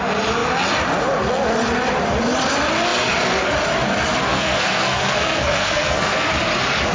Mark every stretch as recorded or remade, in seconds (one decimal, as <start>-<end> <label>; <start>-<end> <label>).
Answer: 0.0-4.3 recorded; 4.3-6.3 remade; 6.3-6.9 recorded